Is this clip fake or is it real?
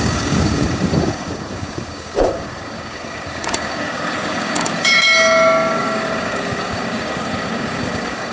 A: fake